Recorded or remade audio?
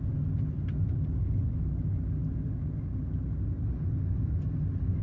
recorded